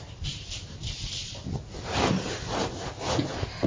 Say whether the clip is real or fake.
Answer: real